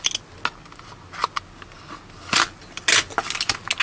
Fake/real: real